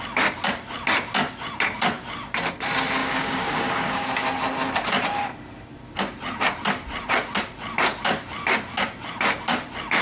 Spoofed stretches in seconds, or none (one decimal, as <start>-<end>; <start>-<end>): 3.0-4.1